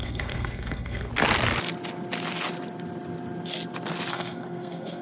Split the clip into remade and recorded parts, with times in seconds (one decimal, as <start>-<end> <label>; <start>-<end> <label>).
0.0-1.1 remade; 1.1-4.1 recorded; 4.1-5.0 remade